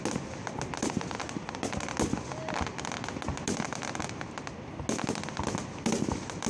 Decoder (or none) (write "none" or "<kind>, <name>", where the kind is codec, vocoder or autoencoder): none